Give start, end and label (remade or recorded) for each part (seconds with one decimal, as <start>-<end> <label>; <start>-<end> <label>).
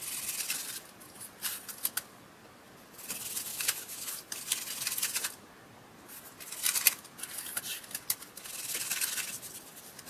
0.0-3.5 recorded; 3.5-4.1 remade; 4.1-10.1 recorded